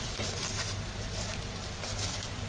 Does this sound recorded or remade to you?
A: remade